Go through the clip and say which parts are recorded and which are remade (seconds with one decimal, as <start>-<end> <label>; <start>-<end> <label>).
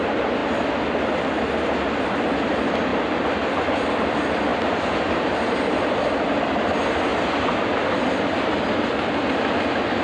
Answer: 0.0-0.4 remade; 0.4-2.0 recorded; 2.0-10.0 remade